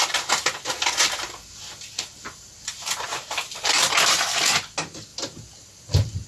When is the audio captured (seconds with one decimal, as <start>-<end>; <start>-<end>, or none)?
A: 0.0-6.3